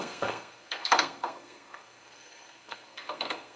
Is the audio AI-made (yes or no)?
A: yes